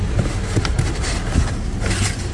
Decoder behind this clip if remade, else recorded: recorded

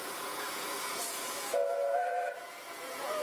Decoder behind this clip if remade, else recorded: remade, vocoder, Vocos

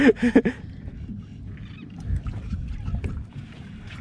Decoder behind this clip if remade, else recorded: recorded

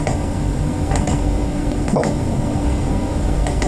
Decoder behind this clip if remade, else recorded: remade, codec, SNAC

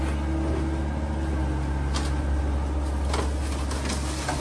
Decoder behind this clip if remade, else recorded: recorded